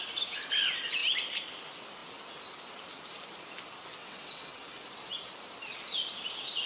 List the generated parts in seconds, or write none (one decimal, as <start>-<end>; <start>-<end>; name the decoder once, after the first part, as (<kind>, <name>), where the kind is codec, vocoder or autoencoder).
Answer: 4.0-4.8 (vocoder, WaveNeXt)